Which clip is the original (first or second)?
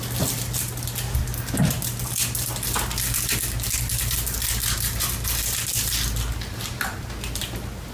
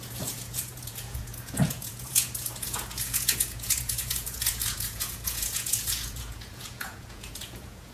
first